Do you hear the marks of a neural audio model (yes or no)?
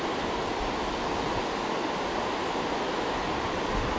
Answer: no